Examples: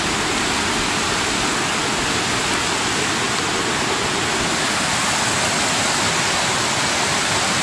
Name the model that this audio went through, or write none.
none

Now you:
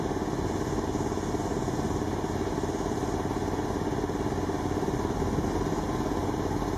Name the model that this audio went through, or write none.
none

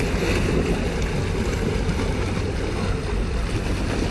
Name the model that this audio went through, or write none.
none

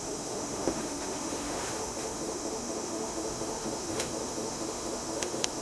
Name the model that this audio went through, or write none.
autoencoder, DAC-VAE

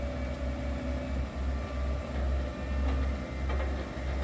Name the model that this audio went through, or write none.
none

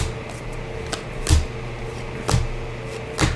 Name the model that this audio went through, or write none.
none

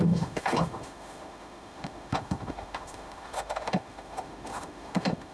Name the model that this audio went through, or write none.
autoencoder, DAC-VAE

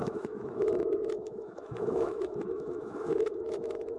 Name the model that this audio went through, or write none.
autoencoder, DAC-VAE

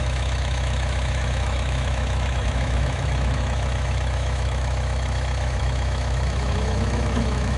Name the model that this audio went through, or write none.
autoencoder, DAC-VAE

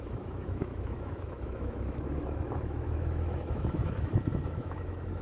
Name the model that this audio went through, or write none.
autoencoder, DAC-VAE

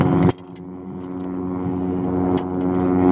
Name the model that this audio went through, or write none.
none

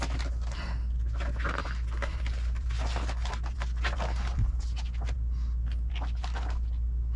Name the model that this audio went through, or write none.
none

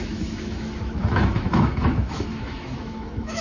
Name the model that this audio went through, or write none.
autoencoder, DAC-VAE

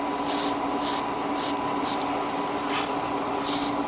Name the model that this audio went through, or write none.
none